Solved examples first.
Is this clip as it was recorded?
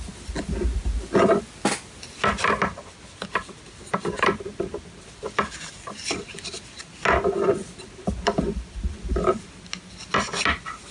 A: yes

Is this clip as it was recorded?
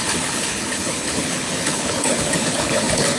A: no